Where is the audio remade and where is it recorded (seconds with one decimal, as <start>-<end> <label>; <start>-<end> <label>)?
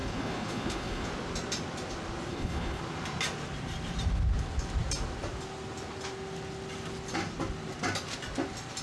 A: 0.0-1.1 remade; 1.1-2.3 recorded; 2.3-2.8 remade; 2.8-8.8 recorded